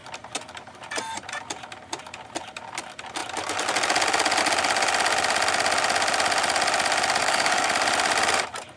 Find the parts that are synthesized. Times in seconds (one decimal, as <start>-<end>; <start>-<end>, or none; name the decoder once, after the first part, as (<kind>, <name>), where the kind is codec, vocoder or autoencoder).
7.2-7.7 (codec, DAC)